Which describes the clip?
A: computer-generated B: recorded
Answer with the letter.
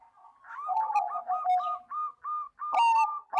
B